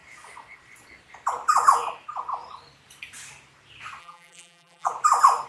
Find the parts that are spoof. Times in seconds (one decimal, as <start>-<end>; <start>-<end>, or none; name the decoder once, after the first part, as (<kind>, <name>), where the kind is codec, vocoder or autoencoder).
4.0-4.9 (vocoder, BigVGAN v2)